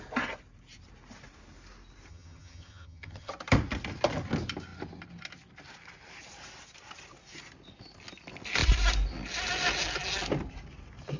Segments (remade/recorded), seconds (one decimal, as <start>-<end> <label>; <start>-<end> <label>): 0.0-2.1 recorded; 2.1-3.3 remade; 3.3-11.2 recorded